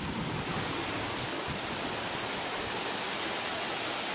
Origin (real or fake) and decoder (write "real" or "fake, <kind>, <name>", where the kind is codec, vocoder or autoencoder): real